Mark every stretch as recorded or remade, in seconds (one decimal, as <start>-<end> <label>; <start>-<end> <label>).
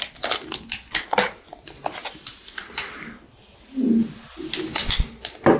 0.0-5.6 recorded